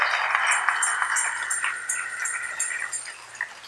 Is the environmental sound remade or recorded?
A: recorded